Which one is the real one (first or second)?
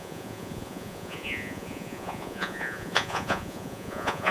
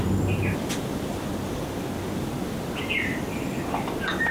second